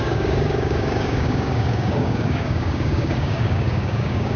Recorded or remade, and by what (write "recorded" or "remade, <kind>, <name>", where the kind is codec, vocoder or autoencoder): remade, codec, DAC